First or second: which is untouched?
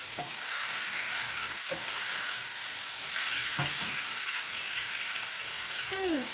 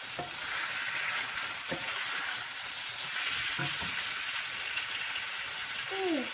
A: second